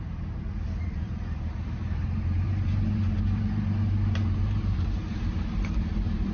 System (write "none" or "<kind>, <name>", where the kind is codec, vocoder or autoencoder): vocoder, BigVGAN v2